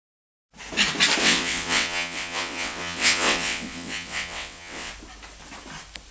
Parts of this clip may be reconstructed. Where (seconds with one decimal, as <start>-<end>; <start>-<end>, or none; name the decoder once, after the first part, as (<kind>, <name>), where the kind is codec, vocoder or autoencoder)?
1.2-4.9 (vocoder, WaveNeXt)